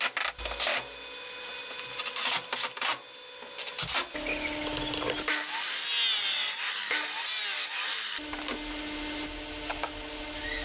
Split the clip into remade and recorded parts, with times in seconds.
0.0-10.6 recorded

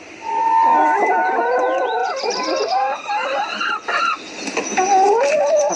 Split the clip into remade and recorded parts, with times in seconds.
0.0-2.0 recorded; 2.0-2.7 remade; 2.7-5.8 recorded

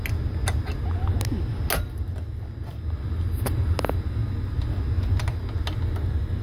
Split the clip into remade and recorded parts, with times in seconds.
0.0-6.4 recorded

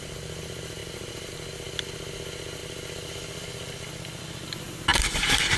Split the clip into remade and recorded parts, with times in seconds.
0.0-0.8 recorded; 0.8-1.3 remade; 1.3-2.6 recorded; 2.6-4.2 remade; 4.2-4.9 recorded; 4.9-5.6 remade

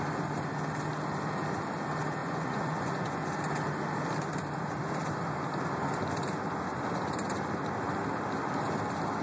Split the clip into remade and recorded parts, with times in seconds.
0.0-2.2 recorded; 2.2-3.2 remade; 3.2-9.2 recorded

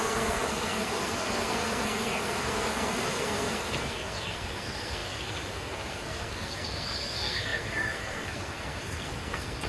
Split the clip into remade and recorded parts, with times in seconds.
0.0-9.7 remade

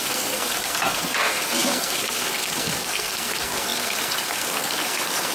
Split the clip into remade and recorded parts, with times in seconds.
0.0-5.3 remade

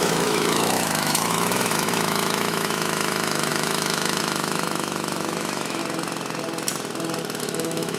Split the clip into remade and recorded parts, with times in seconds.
0.0-5.8 remade; 5.8-7.4 recorded; 7.4-8.0 remade